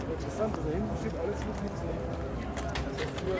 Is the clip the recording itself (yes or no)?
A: yes